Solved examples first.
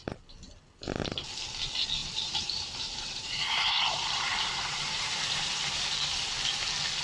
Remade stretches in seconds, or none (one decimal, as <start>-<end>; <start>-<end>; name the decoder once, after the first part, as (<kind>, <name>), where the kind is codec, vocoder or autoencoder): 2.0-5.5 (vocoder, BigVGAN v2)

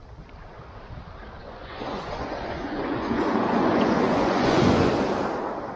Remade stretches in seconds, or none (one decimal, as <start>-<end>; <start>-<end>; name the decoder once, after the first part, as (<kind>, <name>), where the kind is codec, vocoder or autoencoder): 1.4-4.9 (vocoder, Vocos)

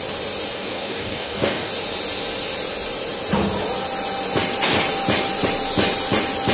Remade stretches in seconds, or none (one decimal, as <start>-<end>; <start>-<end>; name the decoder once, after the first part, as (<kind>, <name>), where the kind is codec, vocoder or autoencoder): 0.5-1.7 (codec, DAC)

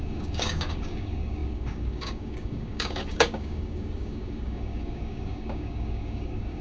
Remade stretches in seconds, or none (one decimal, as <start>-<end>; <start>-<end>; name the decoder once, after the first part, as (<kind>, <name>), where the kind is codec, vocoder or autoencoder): 0.0-6.6 (codec, DAC)

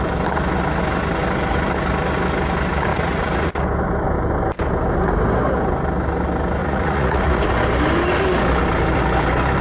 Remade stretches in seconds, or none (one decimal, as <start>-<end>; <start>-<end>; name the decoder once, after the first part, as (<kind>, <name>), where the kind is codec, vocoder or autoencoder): 2.9-3.5 (vocoder, Vocos); 6.6-7.4

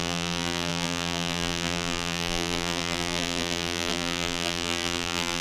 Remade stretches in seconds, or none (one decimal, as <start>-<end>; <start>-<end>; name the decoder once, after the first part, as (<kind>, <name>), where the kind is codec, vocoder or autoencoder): 0.0-5.4 (vocoder, BigVGAN v2)